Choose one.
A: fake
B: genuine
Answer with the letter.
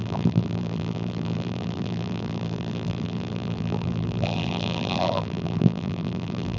A